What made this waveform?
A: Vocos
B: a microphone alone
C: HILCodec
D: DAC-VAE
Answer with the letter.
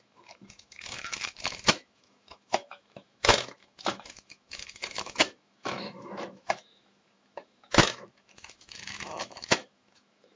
D